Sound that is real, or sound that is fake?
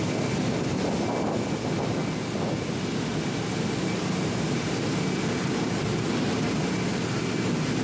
real